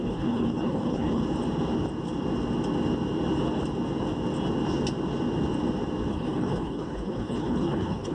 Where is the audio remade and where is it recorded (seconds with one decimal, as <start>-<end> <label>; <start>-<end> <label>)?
0.0-1.2 remade; 1.2-6.1 recorded; 6.1-8.1 remade